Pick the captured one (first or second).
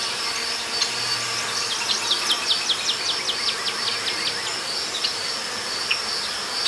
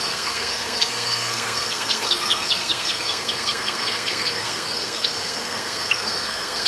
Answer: first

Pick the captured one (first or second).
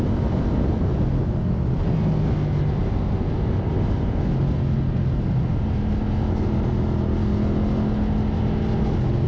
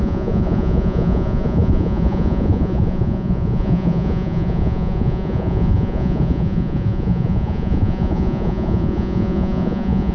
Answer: first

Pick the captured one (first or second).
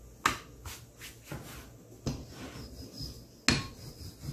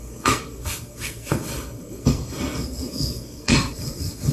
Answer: first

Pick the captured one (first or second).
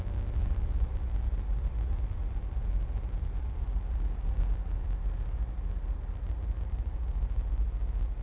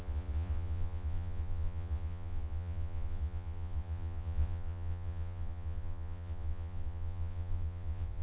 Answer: first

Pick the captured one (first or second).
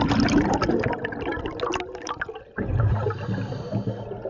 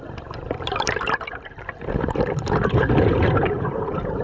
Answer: first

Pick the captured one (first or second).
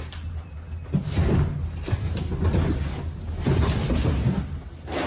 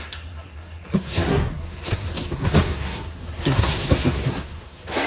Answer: first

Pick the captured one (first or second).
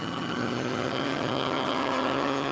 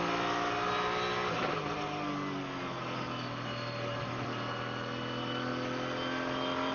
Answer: second